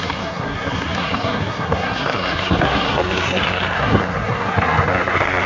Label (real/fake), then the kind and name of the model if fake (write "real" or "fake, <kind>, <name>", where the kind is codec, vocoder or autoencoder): fake, codec, SNAC